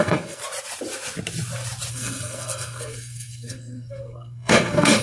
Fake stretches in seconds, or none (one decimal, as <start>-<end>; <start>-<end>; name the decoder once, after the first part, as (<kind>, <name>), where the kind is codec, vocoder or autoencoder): 0.0-0.4 (codec, SNAC); 1.9-5.0